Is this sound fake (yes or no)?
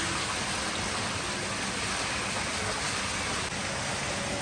no